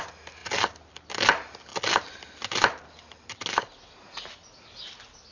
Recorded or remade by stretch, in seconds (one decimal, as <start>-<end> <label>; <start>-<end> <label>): 0.0-5.3 recorded